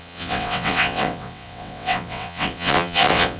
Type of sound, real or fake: fake